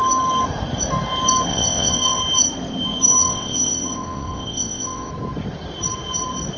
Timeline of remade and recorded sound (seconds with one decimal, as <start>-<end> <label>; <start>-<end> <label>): 0.0-1.5 recorded; 1.5-2.2 remade; 2.2-3.2 recorded; 3.2-5.1 remade; 5.1-6.6 recorded

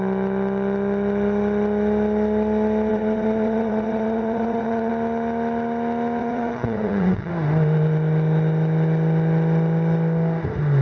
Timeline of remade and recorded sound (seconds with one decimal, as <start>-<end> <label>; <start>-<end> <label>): 0.0-2.9 recorded; 2.9-4.9 remade; 4.9-6.2 recorded; 6.2-7.3 remade; 7.3-10.8 recorded

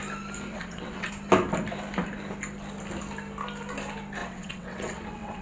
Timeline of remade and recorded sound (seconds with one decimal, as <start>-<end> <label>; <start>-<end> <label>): 0.0-0.5 recorded; 0.5-1.1 remade; 1.1-4.2 recorded; 4.2-5.4 remade

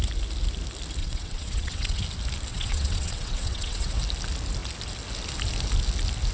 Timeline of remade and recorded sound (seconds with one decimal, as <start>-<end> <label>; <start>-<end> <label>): 0.0-1.0 recorded; 1.0-2.0 remade; 2.0-2.5 recorded; 2.5-4.0 remade; 4.0-6.3 recorded

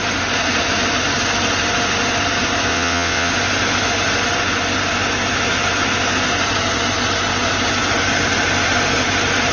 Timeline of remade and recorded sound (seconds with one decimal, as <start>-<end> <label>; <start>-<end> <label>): 0.0-2.7 recorded; 2.7-3.3 remade; 3.3-9.5 recorded

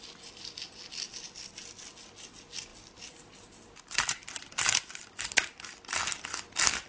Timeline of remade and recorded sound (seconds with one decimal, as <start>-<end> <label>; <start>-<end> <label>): 0.0-6.9 recorded

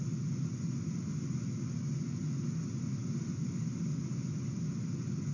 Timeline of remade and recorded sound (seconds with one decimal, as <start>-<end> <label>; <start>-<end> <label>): 0.0-5.3 recorded